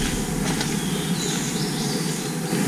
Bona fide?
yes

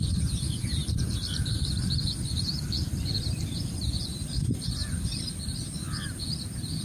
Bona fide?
no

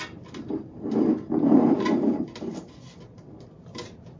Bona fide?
no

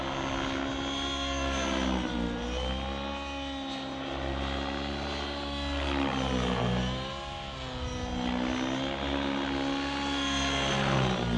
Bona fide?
yes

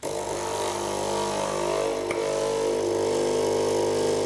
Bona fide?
yes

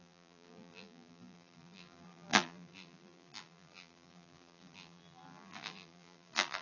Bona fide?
no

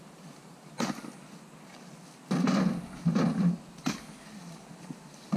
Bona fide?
yes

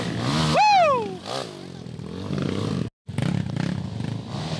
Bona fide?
yes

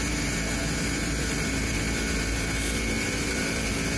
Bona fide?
no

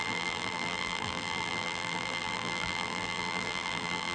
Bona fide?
no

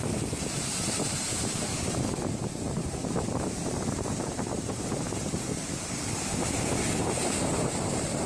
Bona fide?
no